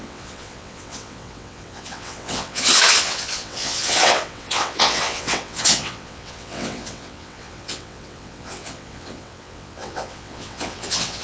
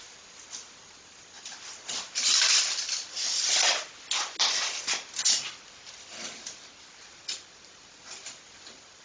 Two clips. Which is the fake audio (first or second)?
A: first